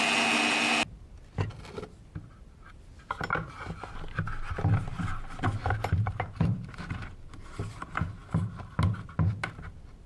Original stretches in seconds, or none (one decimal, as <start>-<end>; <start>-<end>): 0.0-5.6; 7.1-10.1